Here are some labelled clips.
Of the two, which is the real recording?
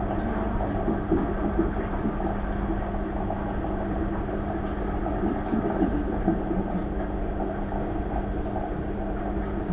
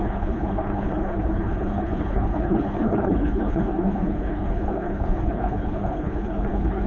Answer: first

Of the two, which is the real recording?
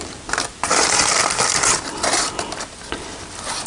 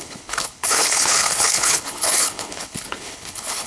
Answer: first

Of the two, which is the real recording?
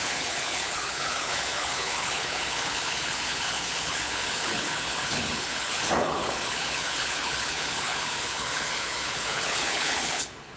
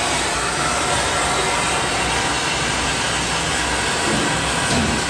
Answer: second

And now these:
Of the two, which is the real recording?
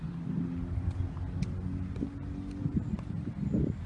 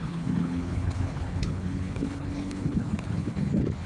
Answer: first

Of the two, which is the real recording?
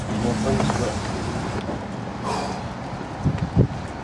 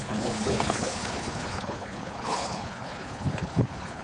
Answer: first